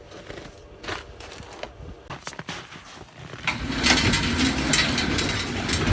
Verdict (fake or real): real